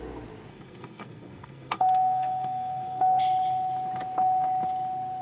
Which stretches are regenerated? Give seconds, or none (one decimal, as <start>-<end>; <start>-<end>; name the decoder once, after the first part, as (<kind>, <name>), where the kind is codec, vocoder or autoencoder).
0.5-3.2 (codec, SNAC)